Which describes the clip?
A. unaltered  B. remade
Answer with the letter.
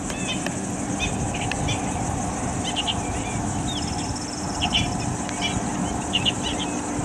A